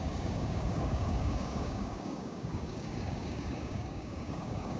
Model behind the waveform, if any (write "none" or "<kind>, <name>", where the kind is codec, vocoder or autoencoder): codec, DAC